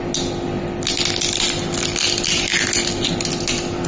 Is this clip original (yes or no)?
yes